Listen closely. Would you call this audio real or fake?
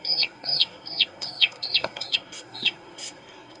fake